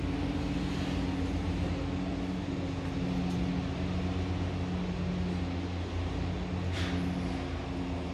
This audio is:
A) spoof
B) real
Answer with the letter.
B